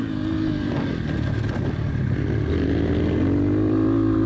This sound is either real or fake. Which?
real